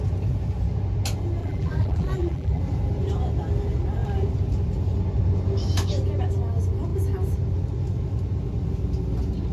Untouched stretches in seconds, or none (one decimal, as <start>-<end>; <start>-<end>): 0.0-1.4; 2.6-9.5